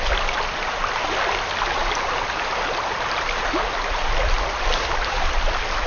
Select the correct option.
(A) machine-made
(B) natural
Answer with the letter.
B